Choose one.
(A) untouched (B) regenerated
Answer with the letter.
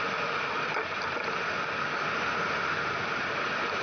A